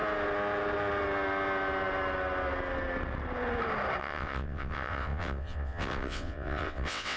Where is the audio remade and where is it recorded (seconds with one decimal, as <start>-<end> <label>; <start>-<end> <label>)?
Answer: 0.0-4.0 recorded; 4.0-7.2 remade

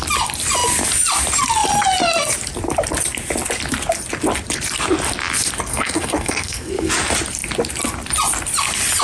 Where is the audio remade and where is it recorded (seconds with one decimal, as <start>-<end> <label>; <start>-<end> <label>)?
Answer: 0.0-5.7 recorded; 5.7-6.9 remade; 6.9-9.0 recorded

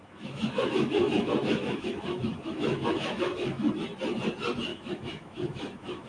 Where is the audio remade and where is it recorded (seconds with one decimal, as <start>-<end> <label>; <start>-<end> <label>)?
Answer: 0.0-3.7 remade; 3.7-4.7 recorded; 4.7-6.1 remade

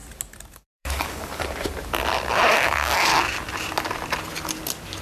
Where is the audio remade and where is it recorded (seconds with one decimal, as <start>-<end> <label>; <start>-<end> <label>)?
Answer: 0.0-0.5 recorded; 0.5-1.3 remade; 1.3-2.5 recorded; 2.5-3.1 remade; 3.1-5.0 recorded

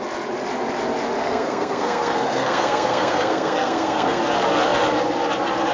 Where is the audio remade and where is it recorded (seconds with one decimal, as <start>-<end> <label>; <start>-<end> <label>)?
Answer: 0.0-1.2 recorded; 1.2-4.2 remade; 4.2-5.7 recorded